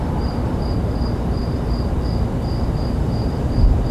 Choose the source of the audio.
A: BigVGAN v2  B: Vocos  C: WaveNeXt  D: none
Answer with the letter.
A